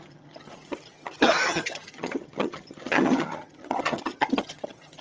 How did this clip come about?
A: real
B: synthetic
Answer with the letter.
B